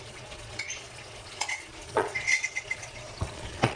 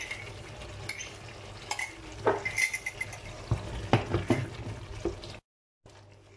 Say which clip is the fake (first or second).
first